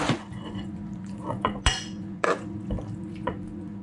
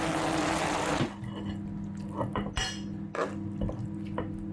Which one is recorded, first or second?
second